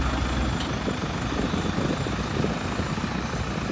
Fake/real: real